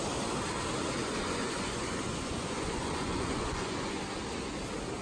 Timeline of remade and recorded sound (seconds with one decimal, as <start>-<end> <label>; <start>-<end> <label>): 0.0-1.0 recorded; 1.0-4.0 remade; 4.0-5.0 recorded